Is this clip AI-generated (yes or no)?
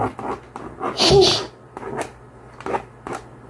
no